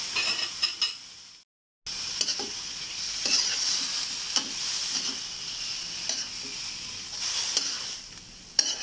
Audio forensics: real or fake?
real